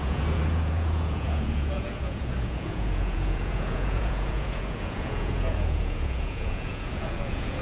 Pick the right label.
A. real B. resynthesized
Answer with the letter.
B